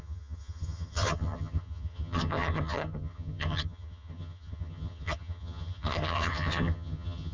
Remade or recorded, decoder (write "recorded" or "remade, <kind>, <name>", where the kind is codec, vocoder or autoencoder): remade, vocoder, HiFi-GAN